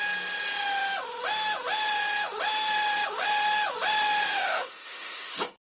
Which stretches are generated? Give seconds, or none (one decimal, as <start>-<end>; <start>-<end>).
4.3-5.3